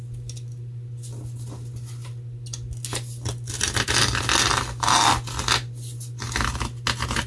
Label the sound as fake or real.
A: real